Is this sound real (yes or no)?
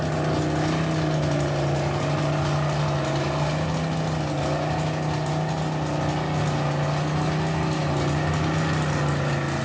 yes